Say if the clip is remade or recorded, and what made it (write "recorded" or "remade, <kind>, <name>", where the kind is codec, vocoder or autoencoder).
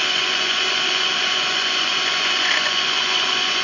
remade, vocoder, Vocos